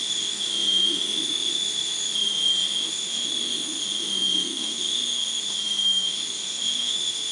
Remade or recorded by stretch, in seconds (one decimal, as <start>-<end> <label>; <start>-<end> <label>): 0.0-7.3 remade